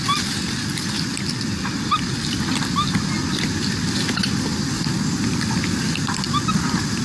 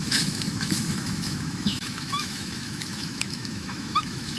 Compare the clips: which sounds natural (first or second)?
first